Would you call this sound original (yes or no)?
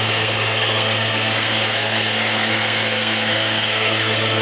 no